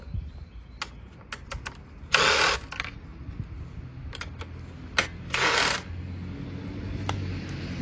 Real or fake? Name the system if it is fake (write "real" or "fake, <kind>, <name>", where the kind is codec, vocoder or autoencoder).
real